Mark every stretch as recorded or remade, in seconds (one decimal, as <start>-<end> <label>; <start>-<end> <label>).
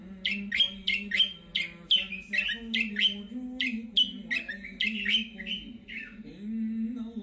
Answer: 0.0-7.2 recorded